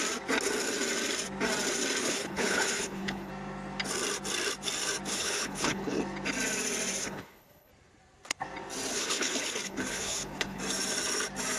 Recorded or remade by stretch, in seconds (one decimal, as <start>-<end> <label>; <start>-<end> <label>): 0.0-2.0 recorded; 2.0-3.3 remade; 3.3-5.1 recorded; 5.1-6.0 remade; 6.0-7.0 recorded; 7.0-7.7 remade; 7.7-8.9 recorded; 8.9-10.6 remade; 10.6-11.6 recorded